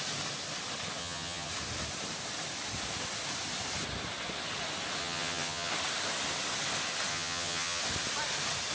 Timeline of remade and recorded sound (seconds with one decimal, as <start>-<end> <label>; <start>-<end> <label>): 0.0-1.0 recorded; 1.0-1.5 remade; 1.5-5.0 recorded; 5.0-5.7 remade; 5.7-7.1 recorded; 7.1-7.8 remade; 7.8-8.7 recorded